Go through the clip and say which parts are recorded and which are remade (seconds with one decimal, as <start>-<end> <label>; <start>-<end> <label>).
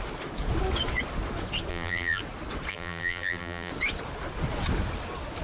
0.0-1.7 recorded; 1.7-2.2 remade; 2.2-2.7 recorded; 2.7-3.7 remade; 3.7-5.4 recorded